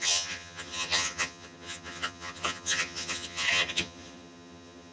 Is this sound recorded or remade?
remade